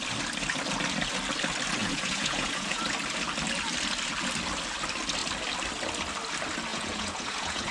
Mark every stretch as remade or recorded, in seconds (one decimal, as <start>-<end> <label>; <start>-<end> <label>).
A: 0.0-1.8 recorded; 1.8-2.8 remade; 2.8-6.7 recorded; 6.7-7.7 remade